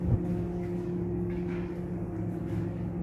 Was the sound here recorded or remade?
remade